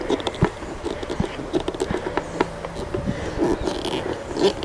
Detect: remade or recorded recorded